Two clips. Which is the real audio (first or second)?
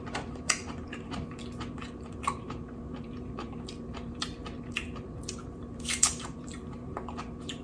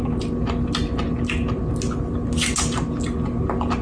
second